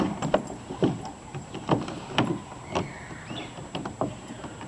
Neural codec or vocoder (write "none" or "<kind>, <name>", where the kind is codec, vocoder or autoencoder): none